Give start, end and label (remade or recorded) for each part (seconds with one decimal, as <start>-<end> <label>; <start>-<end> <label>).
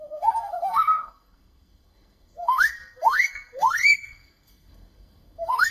0.0-5.7 remade